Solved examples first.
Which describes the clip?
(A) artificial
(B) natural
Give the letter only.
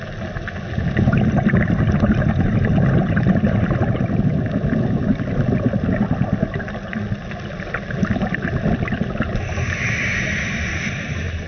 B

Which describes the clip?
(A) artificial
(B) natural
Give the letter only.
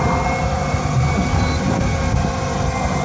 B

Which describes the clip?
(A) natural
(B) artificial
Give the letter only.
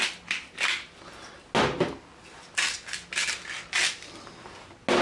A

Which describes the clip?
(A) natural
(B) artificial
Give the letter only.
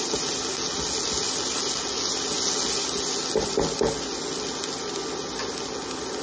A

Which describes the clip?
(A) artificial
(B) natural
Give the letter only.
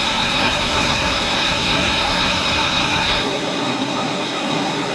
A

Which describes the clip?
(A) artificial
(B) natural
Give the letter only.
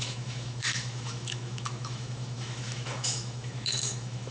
A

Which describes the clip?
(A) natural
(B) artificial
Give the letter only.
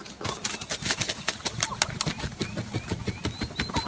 A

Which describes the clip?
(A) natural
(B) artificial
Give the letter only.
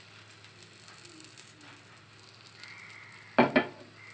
A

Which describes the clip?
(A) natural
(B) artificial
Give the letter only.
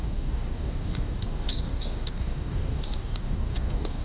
B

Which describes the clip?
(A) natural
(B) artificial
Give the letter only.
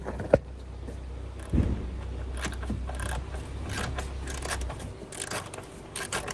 A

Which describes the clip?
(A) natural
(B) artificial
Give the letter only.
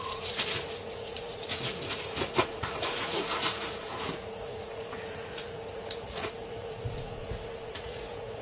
B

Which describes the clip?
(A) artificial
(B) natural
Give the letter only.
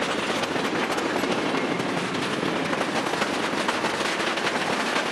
B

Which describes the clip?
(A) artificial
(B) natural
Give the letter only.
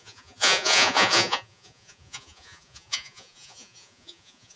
A